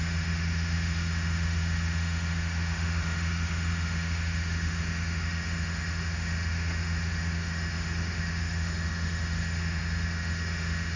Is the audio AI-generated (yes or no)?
yes